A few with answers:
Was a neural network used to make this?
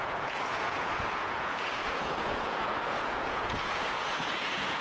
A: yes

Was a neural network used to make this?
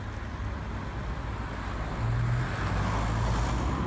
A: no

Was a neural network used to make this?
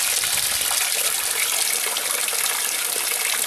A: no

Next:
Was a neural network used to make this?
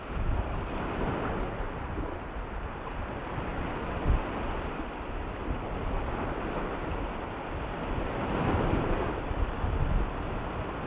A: no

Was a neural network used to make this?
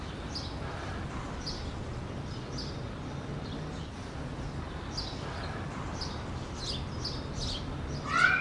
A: no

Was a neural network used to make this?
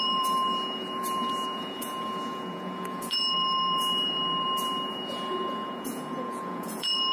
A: yes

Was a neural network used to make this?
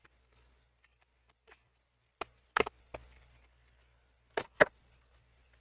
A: no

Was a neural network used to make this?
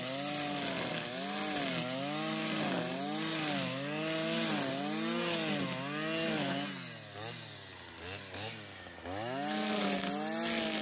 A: no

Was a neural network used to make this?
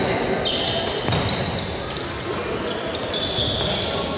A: no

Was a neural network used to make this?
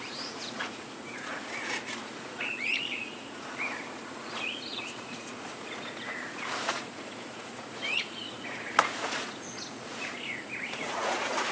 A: yes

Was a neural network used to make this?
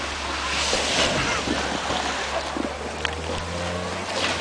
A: no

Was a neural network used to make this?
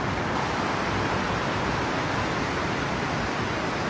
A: no